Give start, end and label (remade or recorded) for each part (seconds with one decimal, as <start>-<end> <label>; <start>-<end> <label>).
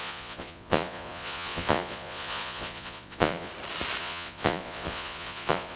0.0-3.5 remade; 3.5-4.0 recorded; 4.0-5.8 remade